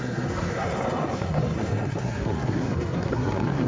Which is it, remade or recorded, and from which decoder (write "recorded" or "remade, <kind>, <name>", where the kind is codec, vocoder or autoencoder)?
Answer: remade, codec, SNAC